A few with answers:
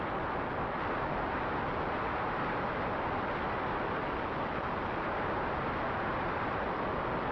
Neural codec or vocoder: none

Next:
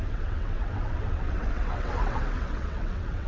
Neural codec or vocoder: vocoder, WaveNeXt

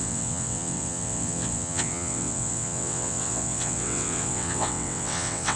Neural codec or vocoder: vocoder, WaveNeXt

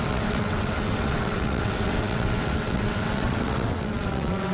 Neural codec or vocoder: vocoder, WaveNeXt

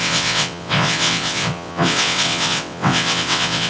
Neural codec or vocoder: vocoder, WaveNeXt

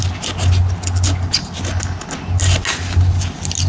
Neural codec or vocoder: none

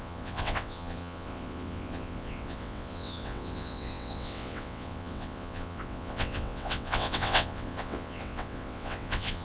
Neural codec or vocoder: vocoder, WaveNeXt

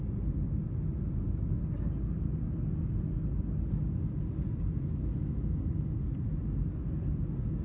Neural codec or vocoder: none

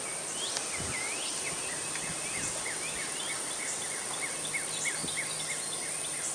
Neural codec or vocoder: none